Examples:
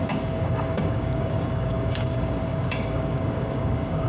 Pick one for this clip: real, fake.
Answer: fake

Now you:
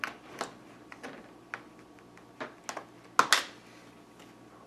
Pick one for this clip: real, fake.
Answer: real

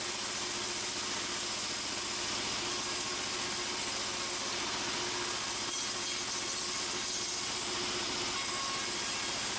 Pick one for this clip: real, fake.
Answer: real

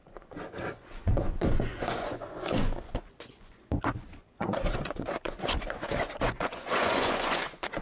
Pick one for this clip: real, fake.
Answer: fake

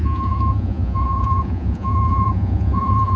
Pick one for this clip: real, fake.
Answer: fake